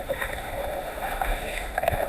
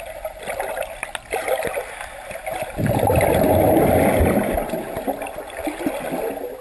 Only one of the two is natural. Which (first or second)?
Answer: second